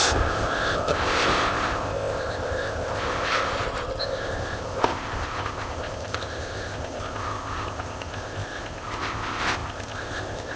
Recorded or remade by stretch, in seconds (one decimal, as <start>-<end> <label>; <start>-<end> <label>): 0.0-3.5 remade; 3.5-4.0 recorded; 4.0-10.6 remade